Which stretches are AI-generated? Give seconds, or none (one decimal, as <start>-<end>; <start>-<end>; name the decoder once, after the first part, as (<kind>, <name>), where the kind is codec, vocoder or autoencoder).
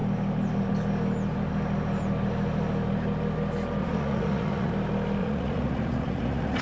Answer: 3.8-4.7 (vocoder, Vocos); 5.2-6.6